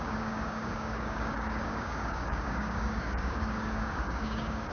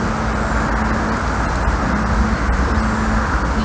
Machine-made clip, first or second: first